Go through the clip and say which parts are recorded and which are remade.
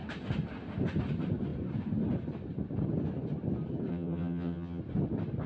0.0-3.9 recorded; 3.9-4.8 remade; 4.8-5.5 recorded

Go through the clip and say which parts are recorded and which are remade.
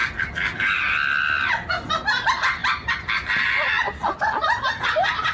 0.0-5.3 recorded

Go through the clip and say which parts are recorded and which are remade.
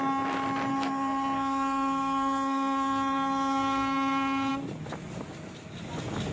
0.0-0.7 recorded; 0.7-4.5 remade; 4.5-6.3 recorded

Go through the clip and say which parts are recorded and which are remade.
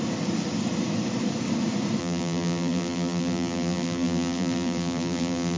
0.0-2.0 recorded; 2.0-5.6 remade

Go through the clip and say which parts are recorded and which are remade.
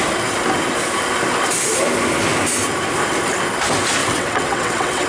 0.0-4.0 recorded; 4.0-5.1 remade